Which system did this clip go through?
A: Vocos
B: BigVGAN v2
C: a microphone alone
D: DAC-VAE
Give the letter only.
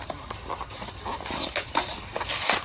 C